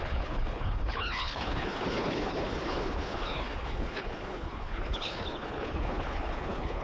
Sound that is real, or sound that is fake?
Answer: fake